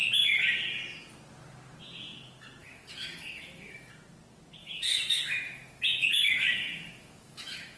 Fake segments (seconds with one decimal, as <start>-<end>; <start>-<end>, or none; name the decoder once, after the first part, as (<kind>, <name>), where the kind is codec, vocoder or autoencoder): 2.6-3.9 (autoencoder, DAC-VAE); 4.6-7.8